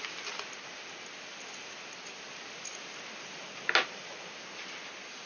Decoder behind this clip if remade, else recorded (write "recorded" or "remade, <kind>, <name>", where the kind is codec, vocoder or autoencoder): recorded